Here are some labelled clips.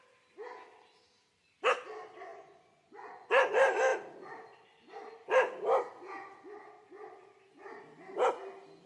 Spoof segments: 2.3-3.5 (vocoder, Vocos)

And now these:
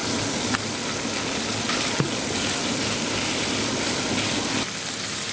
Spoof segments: none

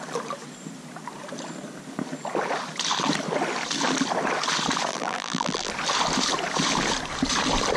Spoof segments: 4.9-5.7 (vocoder, BigVGAN v2)

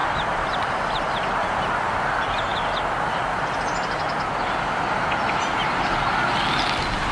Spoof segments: 0.0-2.0 (vocoder, BigVGAN v2)

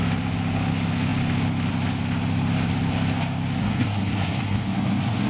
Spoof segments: 3.6-5.3 (codec, SNAC)

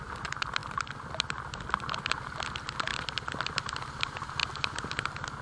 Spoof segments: none

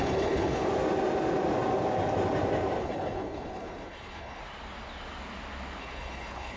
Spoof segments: 0.0-0.6 (codec, HILCodec); 2.8-4.4; 5.8-6.6